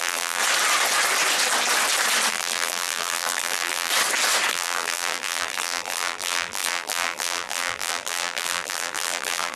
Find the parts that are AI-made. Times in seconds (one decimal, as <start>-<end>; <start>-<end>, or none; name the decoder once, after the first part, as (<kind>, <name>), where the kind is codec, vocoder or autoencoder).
0.0-0.4 (vocoder, BigVGAN v2); 2.3-3.9; 4.5-9.6